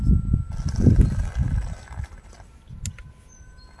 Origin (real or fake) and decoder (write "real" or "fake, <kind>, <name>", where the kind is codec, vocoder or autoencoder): real